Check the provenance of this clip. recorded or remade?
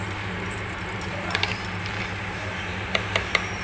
remade